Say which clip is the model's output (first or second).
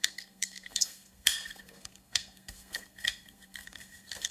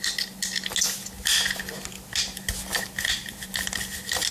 first